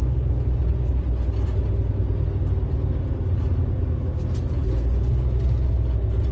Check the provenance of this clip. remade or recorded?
recorded